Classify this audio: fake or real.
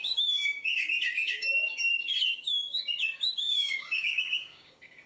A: fake